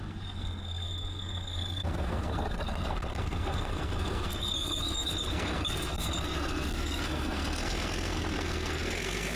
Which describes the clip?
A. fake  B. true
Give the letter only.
A